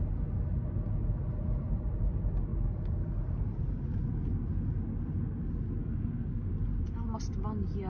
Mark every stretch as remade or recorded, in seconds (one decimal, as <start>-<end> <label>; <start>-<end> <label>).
0.0-5.8 recorded; 5.8-6.5 remade; 6.5-7.9 recorded